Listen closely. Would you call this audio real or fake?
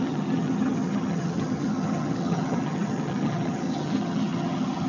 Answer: fake